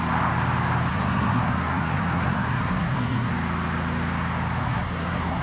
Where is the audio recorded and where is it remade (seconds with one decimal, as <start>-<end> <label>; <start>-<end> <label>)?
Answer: 0.0-0.9 recorded; 0.9-3.3 remade; 3.3-4.6 recorded; 4.6-5.4 remade